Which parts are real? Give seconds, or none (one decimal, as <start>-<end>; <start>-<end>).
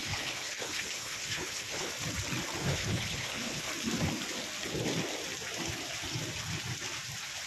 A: 1.9-2.6; 3.7-7.5